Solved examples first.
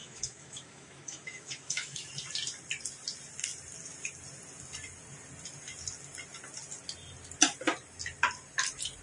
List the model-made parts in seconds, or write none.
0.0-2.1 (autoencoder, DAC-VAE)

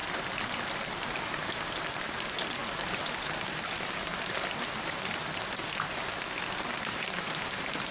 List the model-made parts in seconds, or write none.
2.0-2.6 (vocoder, BigVGAN v2); 3.4-4.1; 7.0-7.9